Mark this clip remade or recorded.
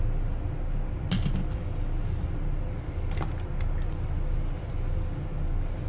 recorded